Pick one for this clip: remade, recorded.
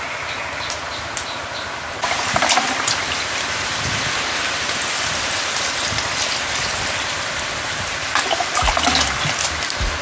recorded